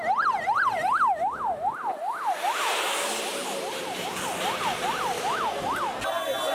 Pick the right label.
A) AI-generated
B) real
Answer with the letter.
B